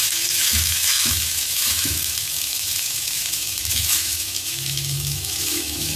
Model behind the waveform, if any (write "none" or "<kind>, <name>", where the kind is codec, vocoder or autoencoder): autoencoder, DAC-VAE